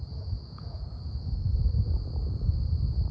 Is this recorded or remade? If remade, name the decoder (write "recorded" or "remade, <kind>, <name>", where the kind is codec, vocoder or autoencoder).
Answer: remade, vocoder, Vocos